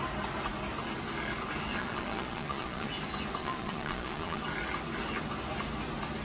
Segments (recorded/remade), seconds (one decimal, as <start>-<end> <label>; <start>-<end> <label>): 0.0-1.7 recorded; 1.7-2.9 remade; 2.9-3.4 recorded; 3.4-4.4 remade; 4.4-6.2 recorded